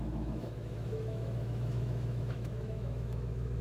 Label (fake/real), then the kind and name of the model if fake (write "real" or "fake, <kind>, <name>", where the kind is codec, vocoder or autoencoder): fake, autoencoder, DAC-VAE